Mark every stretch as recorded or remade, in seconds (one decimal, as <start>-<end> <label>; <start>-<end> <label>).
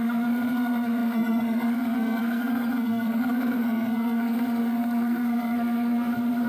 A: 0.0-6.5 remade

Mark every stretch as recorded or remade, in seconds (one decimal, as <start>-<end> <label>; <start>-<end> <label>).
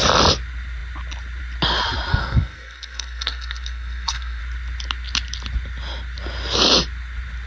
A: 0.0-2.1 recorded; 2.1-4.4 remade; 4.4-7.5 recorded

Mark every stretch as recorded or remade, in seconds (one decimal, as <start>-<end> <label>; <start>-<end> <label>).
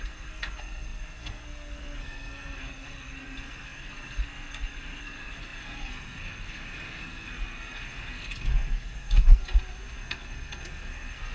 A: 0.0-9.4 remade; 9.4-10.0 recorded; 10.0-11.3 remade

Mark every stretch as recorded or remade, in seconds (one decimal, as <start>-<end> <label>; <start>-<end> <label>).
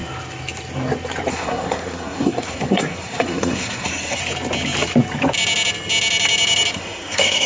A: 0.0-1.3 recorded; 1.3-4.2 remade; 4.2-6.7 recorded; 6.7-7.5 remade